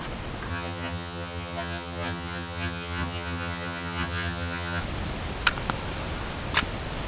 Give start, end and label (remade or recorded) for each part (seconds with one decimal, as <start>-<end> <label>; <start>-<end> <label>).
0.0-0.5 recorded; 0.5-4.8 remade; 4.8-7.1 recorded